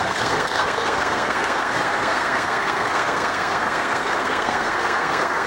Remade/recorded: remade